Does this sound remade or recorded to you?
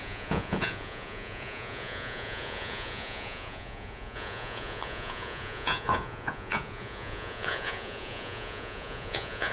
remade